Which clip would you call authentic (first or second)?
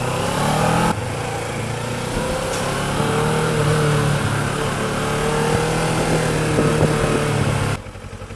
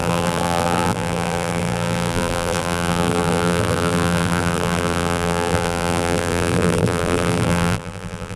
first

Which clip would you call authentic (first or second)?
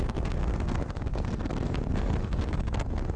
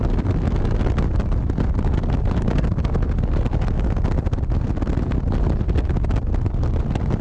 second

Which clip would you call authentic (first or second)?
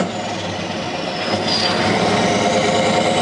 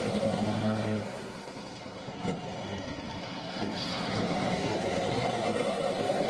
first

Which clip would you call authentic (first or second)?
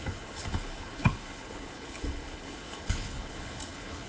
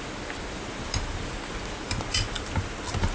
second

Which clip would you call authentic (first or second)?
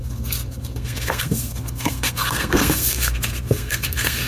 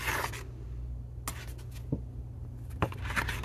second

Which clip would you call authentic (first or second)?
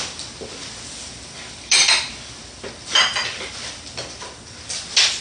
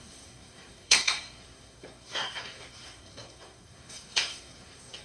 first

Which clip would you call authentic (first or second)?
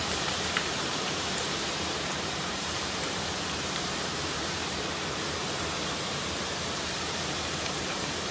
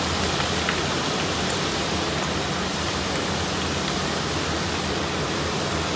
second